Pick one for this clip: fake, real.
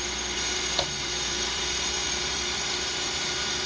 fake